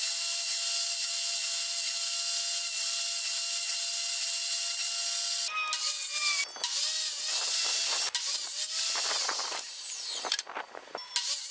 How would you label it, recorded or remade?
recorded